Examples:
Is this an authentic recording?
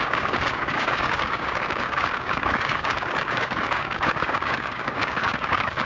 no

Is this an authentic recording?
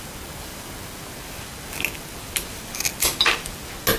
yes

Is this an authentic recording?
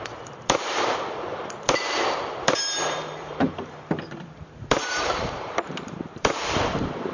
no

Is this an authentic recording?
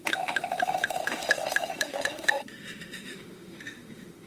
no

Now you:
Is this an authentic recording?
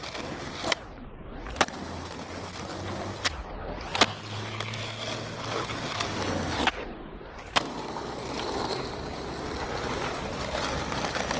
yes